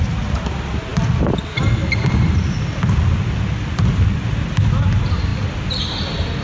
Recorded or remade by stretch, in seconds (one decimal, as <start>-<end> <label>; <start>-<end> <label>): 0.0-0.9 recorded; 0.9-4.0 remade; 4.0-5.3 recorded; 5.3-5.8 remade; 5.8-6.4 recorded